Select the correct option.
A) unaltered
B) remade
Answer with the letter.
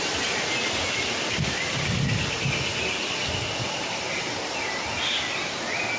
A